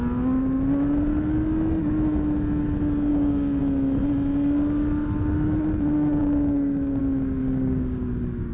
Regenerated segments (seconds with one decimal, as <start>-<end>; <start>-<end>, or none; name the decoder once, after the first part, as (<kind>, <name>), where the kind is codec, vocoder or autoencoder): 3.1-3.6 (codec, DAC); 6.2-7.0; 7.4-8.1

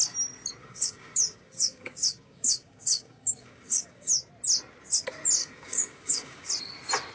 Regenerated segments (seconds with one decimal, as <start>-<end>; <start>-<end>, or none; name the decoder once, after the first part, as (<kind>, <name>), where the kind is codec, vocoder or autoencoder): 0.6-4.1 (codec, DAC); 5.4-6.5

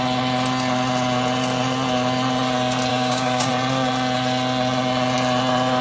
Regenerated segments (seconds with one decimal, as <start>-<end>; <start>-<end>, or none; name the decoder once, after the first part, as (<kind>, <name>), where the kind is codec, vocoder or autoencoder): 2.9-3.5 (codec, DAC)

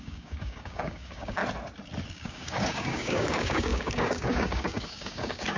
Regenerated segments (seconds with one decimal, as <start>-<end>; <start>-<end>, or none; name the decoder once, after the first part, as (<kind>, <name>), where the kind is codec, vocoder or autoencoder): 0.0-1.4 (codec, DAC); 2.1-5.6

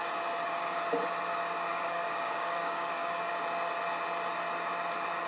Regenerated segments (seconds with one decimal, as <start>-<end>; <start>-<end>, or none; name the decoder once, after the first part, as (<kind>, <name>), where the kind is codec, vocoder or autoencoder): 1.7-3.3 (codec, DAC)

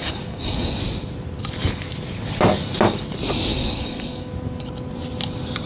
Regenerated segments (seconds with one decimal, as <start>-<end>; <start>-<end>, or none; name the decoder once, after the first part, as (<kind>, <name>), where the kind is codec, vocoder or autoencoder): 0.0-0.8 (codec, DAC); 3.5-4.3